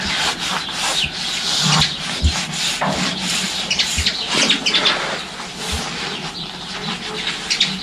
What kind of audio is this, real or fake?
real